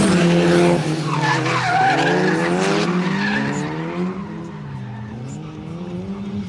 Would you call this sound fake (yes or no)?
no